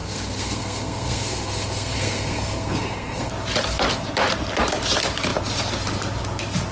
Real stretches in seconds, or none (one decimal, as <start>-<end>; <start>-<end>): 3.3-6.7